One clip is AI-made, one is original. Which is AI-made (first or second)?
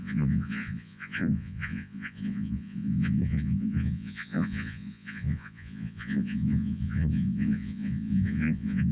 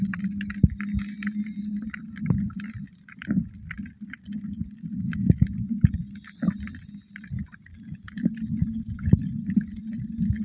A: first